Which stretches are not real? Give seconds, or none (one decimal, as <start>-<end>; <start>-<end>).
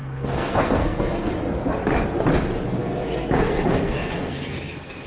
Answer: 0.0-1.3; 2.8-5.1